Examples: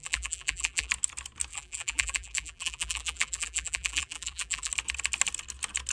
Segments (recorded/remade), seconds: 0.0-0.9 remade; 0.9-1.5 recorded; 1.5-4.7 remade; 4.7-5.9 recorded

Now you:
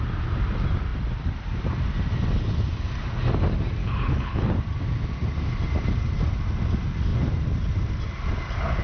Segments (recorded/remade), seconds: 0.0-3.8 recorded; 3.8-4.5 remade; 4.5-8.8 recorded